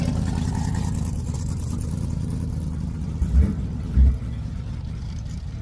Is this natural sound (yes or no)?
yes